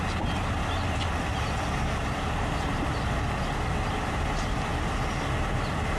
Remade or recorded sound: recorded